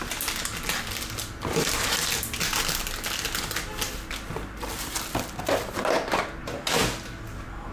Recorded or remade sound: recorded